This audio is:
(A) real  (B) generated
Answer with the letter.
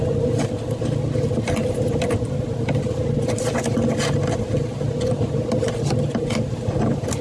A